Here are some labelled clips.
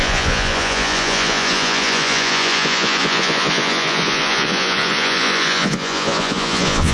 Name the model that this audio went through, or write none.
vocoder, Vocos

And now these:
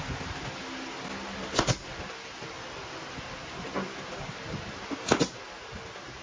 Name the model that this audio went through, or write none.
none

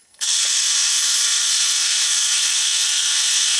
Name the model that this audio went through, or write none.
codec, SNAC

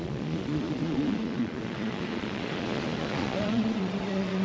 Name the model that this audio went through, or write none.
vocoder, Vocos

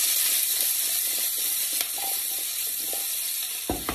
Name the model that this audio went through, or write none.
vocoder, BigVGAN v2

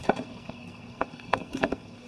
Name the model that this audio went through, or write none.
codec, SNAC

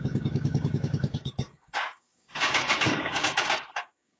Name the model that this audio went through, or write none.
codec, DAC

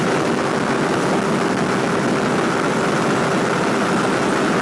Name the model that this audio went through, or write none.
none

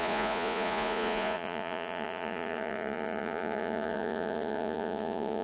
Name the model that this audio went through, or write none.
vocoder, Vocos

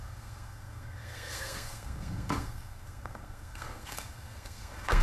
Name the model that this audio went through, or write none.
codec, SNAC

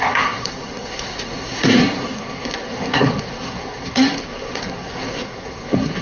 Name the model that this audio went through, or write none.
codec, SNAC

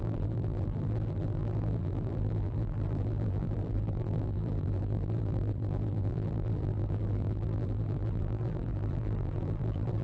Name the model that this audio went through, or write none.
vocoder, BigVGAN v2